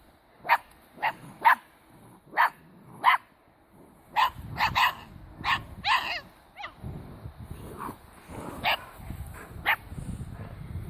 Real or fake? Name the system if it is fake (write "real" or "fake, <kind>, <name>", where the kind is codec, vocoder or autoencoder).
real